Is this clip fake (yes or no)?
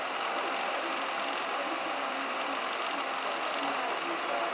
no